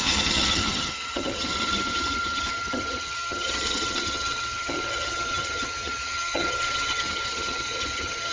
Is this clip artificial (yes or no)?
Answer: yes